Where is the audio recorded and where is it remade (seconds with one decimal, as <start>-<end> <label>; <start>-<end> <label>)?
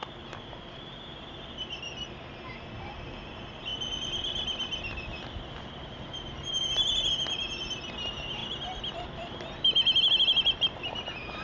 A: 0.0-11.4 recorded